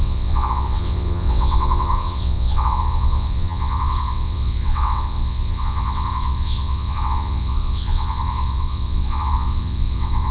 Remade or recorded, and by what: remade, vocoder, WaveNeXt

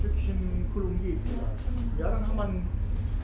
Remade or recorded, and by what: recorded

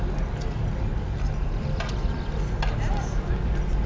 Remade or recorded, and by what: recorded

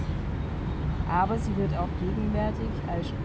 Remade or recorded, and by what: recorded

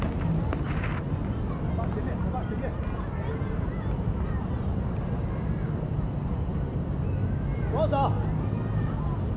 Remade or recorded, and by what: recorded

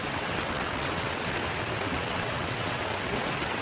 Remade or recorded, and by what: remade, vocoder, WaveNeXt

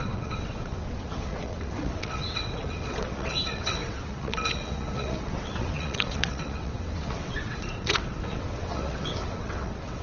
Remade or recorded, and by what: remade, vocoder, WaveNeXt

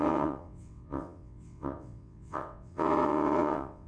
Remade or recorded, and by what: remade, vocoder, WaveNeXt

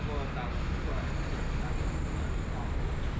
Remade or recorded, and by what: recorded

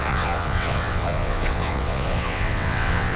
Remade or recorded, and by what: remade, vocoder, WaveNeXt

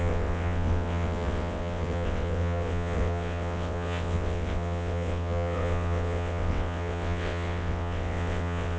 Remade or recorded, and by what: remade, vocoder, WaveNeXt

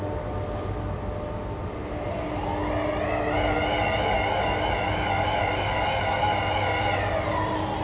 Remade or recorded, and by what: recorded